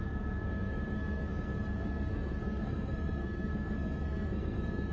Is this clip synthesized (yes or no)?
yes